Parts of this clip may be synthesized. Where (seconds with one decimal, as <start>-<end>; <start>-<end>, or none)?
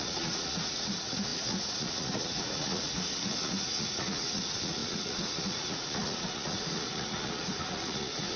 0.0-8.4